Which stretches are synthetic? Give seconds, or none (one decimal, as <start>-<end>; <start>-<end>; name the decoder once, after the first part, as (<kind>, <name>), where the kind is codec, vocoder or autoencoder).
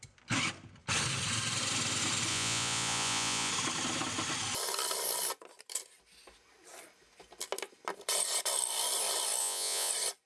2.3-3.5 (vocoder, Vocos); 9.4-9.9